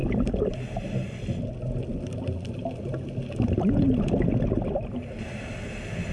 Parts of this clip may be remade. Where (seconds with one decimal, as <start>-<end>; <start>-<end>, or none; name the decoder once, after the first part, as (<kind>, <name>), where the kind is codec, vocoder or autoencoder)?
none